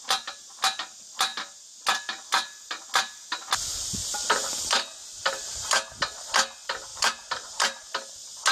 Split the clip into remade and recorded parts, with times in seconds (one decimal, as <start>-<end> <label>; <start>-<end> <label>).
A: 0.0-4.0 recorded; 4.0-6.0 remade; 6.0-6.9 recorded; 6.9-7.8 remade; 7.8-8.5 recorded